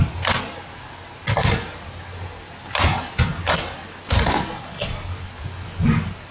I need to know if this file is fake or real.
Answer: real